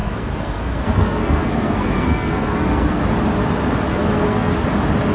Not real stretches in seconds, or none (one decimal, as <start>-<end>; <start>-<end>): 0.0-3.0; 3.9-4.5